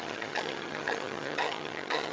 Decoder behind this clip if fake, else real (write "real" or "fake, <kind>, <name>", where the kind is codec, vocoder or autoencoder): fake, vocoder, HiFi-GAN